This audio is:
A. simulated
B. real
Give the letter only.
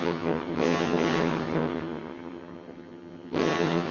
A